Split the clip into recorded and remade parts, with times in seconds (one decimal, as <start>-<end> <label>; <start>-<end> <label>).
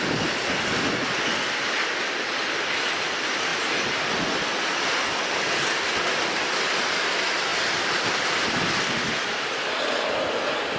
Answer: 0.0-10.8 recorded